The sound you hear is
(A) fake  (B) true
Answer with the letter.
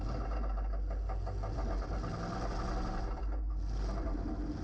B